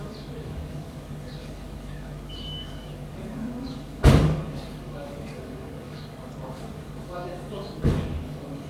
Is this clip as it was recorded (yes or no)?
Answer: no